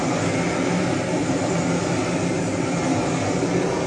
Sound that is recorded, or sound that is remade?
recorded